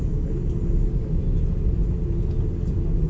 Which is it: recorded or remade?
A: recorded